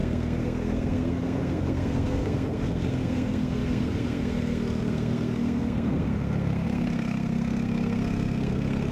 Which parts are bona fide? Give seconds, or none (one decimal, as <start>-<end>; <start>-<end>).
none